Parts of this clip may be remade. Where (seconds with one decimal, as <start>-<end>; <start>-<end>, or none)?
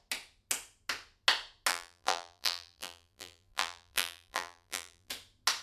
1.7-5.1